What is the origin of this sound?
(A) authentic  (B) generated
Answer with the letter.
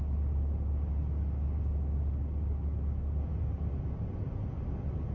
A